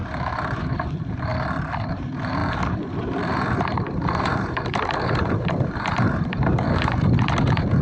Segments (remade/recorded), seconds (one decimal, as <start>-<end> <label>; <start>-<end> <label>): 0.0-1.3 remade; 1.3-1.9 recorded; 1.9-7.8 remade

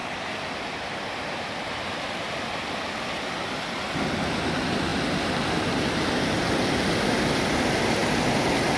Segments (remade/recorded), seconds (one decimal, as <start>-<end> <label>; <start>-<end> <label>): 0.0-8.8 recorded

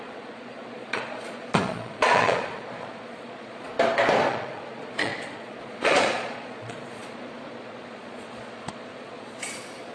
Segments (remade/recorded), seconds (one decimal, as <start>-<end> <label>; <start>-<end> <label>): 0.0-3.7 remade; 3.7-4.3 recorded; 4.3-9.9 remade

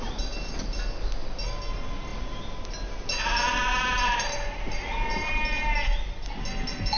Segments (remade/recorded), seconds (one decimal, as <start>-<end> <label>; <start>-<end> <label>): 0.0-7.0 recorded

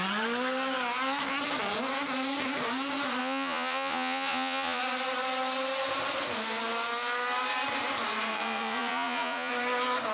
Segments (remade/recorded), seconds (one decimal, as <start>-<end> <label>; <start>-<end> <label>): 0.0-3.2 recorded; 3.2-4.8 remade; 4.8-8.3 recorded; 8.3-9.5 remade; 9.5-10.1 recorded